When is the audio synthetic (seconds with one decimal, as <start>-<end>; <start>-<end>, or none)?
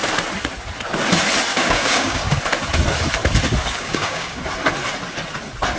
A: 1.5-2.4; 3.6-4.4